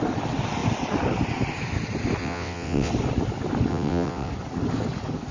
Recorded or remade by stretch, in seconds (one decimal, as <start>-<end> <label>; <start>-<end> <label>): 0.0-2.2 recorded; 2.2-2.9 remade; 2.9-3.7 recorded; 3.7-4.3 remade; 4.3-5.3 recorded